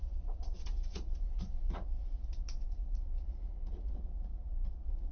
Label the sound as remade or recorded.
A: remade